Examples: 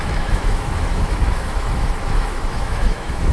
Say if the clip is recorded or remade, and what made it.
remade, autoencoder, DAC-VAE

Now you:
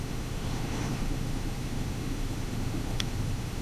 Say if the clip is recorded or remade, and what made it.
remade, autoencoder, DAC-VAE